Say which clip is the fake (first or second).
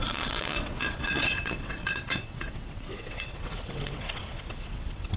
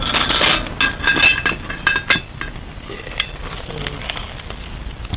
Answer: first